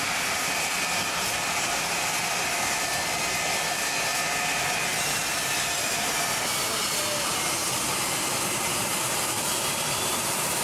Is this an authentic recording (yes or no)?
yes